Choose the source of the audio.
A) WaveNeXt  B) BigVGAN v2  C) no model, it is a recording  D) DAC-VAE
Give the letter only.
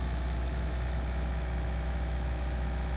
D